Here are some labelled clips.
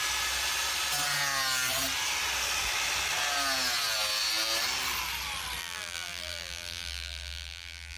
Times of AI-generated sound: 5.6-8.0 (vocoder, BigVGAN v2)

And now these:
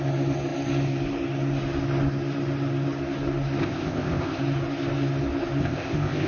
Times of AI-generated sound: 3.6-4.4 (codec, ZipCodec); 5.6-6.3

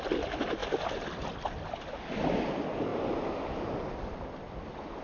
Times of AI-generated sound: none

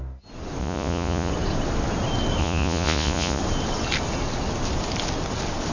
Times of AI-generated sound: 0.6-1.3 (vocoder, Vocos); 2.4-3.4